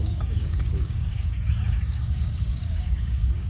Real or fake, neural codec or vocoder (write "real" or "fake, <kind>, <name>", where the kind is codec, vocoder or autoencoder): fake, codec, DAC